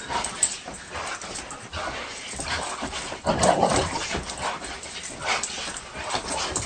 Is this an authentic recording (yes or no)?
yes